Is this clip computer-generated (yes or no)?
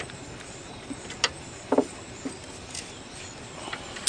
no